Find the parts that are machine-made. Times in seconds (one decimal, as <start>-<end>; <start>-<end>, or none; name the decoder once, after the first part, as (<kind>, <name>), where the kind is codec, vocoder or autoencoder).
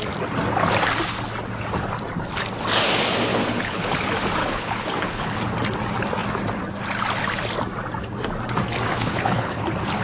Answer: 3.3-4.0 (codec, HILCodec); 4.4-5.4; 8.9-9.6